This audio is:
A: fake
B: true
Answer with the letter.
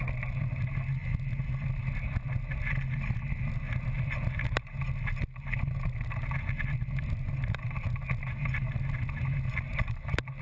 B